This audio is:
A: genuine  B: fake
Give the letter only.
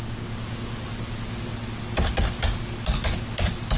A